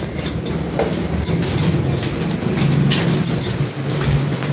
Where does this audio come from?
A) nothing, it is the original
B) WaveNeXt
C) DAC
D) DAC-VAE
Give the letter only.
A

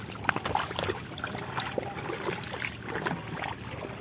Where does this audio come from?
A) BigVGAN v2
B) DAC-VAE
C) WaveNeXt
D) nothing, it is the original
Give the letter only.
D